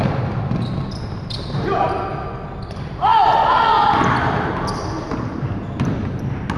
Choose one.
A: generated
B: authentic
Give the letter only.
B